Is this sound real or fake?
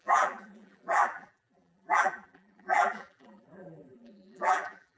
fake